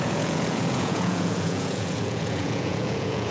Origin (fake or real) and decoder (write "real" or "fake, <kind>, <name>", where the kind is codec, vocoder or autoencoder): fake, vocoder, Vocos